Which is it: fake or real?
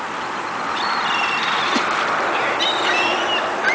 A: real